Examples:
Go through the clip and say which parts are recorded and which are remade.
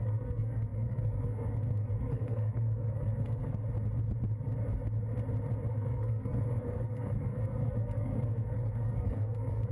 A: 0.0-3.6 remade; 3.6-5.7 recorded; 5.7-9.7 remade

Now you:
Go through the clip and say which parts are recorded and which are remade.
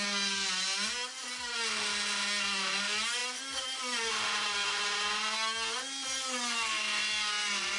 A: 0.0-7.8 recorded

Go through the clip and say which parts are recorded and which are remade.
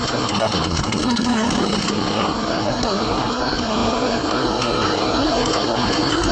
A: 0.0-6.3 remade